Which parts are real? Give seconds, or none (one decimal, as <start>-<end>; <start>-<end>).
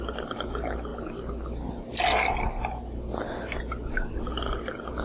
0.0-5.0